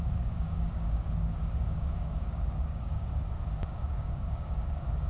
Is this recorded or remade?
remade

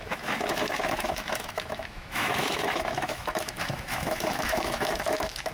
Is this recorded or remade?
remade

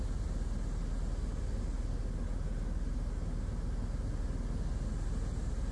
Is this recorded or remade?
recorded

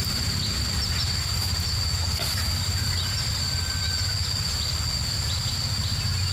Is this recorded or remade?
recorded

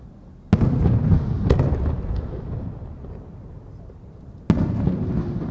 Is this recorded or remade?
recorded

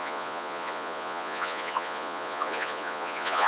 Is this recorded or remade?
remade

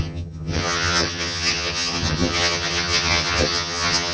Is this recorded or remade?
remade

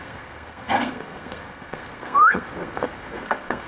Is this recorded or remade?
remade